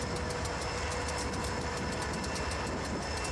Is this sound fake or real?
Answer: real